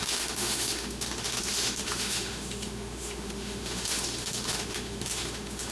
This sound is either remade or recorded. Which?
remade